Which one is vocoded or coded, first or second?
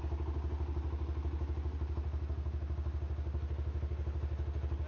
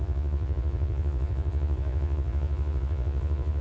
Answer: second